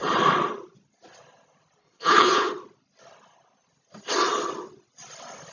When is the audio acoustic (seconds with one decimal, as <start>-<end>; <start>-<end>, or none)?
0.0-1.8; 2.5-5.5